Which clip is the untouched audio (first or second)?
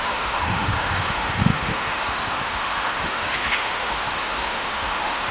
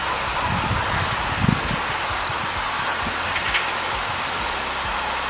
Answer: second